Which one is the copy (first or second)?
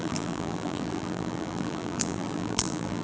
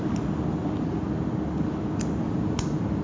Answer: first